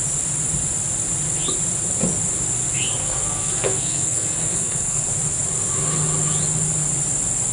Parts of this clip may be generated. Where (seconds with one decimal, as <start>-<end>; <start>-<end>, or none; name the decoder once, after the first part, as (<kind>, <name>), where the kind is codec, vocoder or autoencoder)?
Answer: 3.0-5.1 (codec, SNAC)